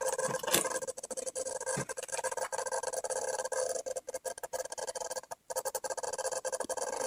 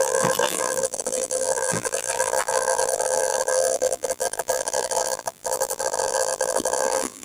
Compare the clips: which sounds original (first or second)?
first